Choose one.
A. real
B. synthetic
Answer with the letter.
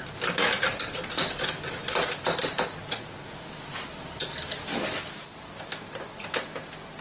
A